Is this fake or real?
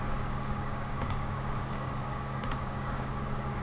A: fake